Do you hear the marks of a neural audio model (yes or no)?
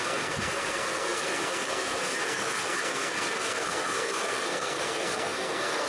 yes